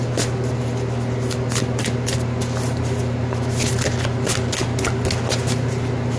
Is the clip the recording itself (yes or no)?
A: yes